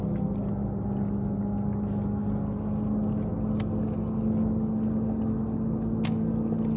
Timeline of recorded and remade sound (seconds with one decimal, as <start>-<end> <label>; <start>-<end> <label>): 0.0-6.8 recorded